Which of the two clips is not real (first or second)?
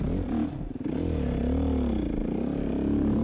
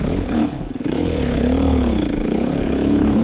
second